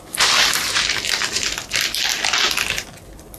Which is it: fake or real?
real